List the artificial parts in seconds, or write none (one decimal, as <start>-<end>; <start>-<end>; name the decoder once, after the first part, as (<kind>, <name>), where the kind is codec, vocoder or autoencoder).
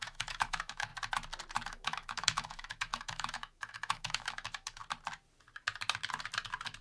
0.0-0.9 (autoencoder, DAC-VAE); 1.7-4.8